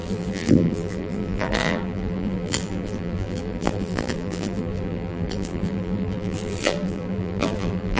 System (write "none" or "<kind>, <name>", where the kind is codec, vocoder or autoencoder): vocoder, BigVGAN v2